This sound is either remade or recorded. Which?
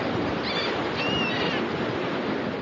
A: recorded